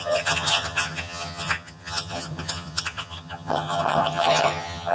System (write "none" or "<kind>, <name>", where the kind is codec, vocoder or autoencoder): vocoder, HiFi-GAN